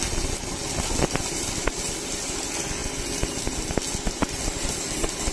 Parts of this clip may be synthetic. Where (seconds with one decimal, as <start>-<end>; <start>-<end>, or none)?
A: none